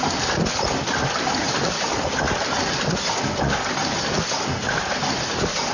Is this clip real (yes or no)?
yes